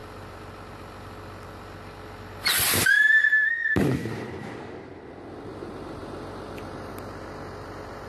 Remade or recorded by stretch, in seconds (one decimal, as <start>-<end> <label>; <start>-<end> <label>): 0.0-8.1 recorded